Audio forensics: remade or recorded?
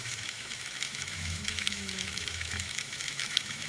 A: remade